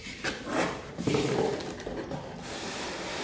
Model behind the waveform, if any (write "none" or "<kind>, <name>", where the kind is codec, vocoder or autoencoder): none